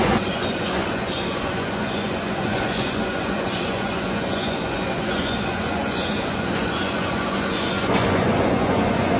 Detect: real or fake fake